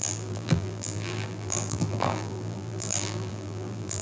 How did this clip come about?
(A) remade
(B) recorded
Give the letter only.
A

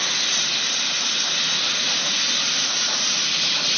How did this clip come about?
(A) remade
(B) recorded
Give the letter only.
B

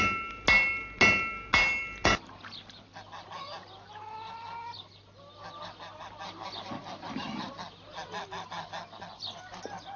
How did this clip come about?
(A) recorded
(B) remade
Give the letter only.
A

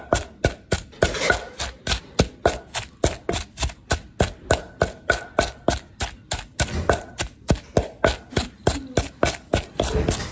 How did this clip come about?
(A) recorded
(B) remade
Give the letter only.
A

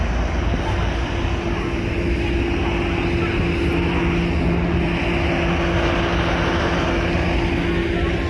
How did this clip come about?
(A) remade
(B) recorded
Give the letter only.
B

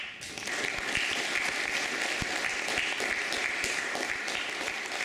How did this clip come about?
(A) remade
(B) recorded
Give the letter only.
B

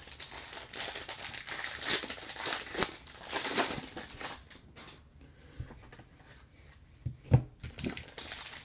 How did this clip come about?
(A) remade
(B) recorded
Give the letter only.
B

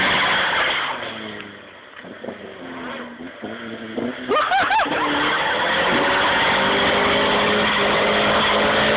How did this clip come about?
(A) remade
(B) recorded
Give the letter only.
B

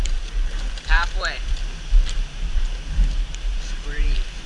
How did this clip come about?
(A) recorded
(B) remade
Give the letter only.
B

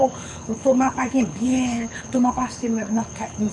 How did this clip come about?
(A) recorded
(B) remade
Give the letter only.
B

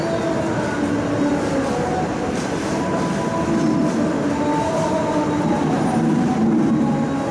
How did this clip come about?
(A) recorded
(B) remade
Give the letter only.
A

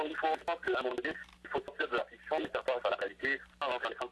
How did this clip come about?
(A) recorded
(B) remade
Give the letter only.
A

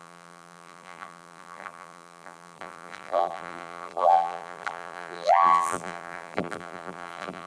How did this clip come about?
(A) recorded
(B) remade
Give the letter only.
B